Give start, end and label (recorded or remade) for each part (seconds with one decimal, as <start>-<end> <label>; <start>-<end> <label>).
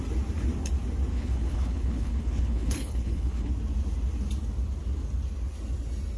0.0-1.1 recorded; 1.1-3.5 remade; 3.5-6.2 recorded